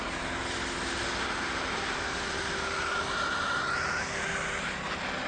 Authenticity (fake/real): real